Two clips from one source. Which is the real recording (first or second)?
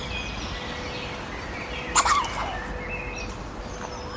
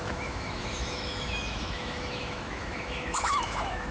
first